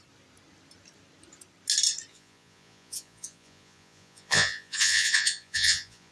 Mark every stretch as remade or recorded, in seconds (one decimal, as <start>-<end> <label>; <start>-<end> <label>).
0.0-2.1 recorded; 2.1-6.1 remade